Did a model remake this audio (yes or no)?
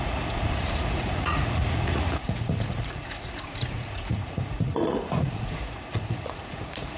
yes